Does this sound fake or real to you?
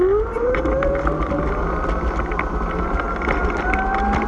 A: real